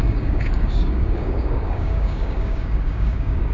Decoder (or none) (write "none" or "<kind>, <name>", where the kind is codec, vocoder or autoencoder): codec, DAC